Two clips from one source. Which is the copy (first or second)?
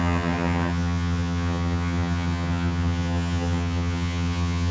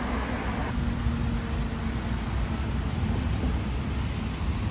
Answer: first